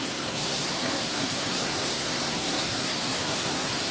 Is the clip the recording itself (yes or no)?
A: no